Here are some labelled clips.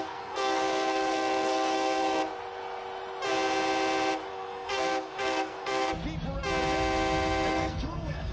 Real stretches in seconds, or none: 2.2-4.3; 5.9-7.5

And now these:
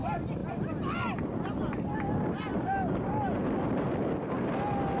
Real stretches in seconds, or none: 0.0-5.0

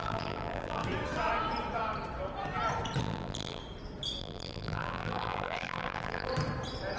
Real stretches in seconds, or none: 0.8-3.0; 3.6-4.2; 6.3-7.0

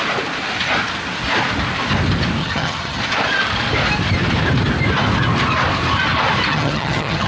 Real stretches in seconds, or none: 0.0-2.4; 3.0-6.5

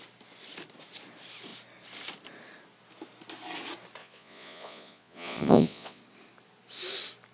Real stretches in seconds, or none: 0.0-4.0; 6.0-7.3

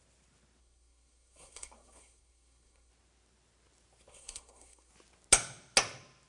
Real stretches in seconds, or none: 0.0-0.6; 2.9-4.1; 4.9-6.3